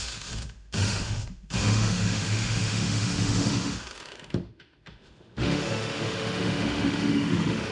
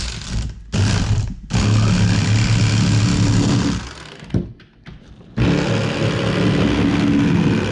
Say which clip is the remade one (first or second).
first